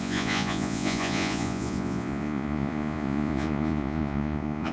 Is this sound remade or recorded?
remade